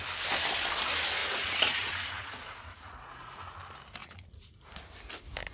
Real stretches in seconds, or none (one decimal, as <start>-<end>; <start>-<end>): 0.0-1.2; 3.5-4.0; 4.5-5.5